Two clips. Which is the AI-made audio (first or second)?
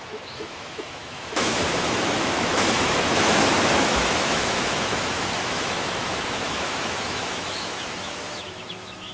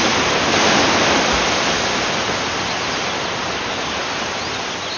first